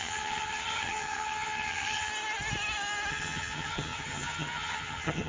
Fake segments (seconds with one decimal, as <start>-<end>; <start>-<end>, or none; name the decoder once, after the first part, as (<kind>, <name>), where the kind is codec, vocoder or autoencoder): 0.0-2.1 (vocoder, HiFi-GAN); 3.1-5.3